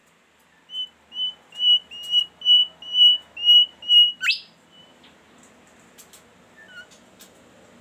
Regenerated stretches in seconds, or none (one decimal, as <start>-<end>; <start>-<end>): none